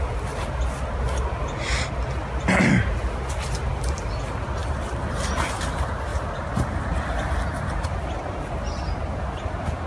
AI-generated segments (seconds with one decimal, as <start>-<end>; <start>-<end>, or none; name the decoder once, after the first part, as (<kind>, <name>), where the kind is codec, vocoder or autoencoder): 4.6-5.3 (vocoder, BigVGAN v2); 6.1-6.8